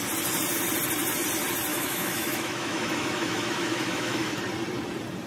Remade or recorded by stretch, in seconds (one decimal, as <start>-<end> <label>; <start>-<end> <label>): 0.0-1.7 recorded; 1.7-4.4 remade; 4.4-5.3 recorded